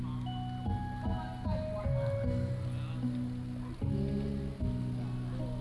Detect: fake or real real